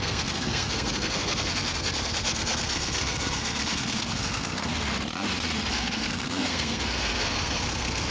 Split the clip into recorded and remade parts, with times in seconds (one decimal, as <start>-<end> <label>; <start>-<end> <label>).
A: 0.0-4.7 remade; 4.7-5.7 recorded; 5.7-8.1 remade